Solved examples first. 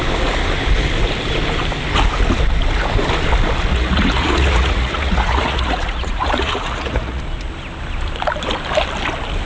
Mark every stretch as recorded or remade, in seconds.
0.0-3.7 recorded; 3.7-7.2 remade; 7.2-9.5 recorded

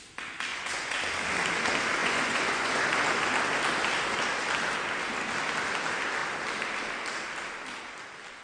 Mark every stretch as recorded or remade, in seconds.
0.0-0.5 recorded; 0.5-1.0 remade; 1.0-2.0 recorded; 2.0-2.8 remade; 2.8-8.4 recorded

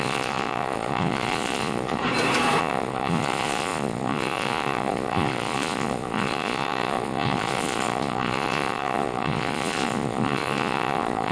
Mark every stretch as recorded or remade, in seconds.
0.0-2.0 remade; 2.0-2.6 recorded; 2.6-11.3 remade

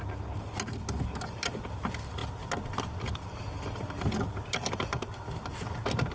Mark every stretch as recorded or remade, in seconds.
0.0-6.1 recorded

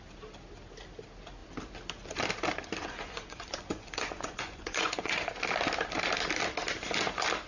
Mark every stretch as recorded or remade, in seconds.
0.0-2.8 recorded; 2.8-5.3 remade; 5.3-7.5 recorded

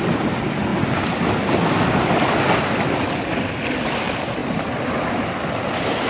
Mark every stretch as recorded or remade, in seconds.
0.0-6.1 recorded

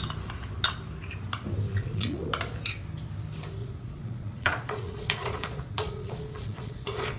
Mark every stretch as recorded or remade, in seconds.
0.0-1.7 recorded; 1.7-2.3 remade; 2.3-3.6 recorded; 3.6-7.2 remade

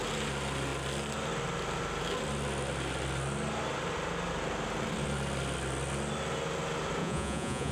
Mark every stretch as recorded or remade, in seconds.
0.0-7.0 recorded; 7.0-7.7 remade